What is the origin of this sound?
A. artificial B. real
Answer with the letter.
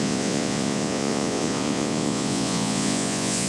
A